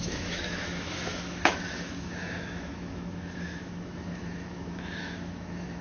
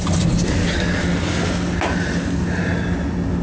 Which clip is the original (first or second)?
second